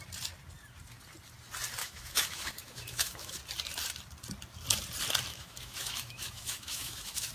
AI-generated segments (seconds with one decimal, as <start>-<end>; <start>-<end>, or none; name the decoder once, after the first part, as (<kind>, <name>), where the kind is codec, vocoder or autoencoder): 1.8-3.4 (autoencoder, DAC-VAE); 5.3-7.3